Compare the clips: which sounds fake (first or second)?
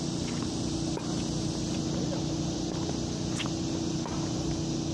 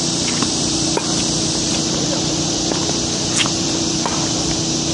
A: second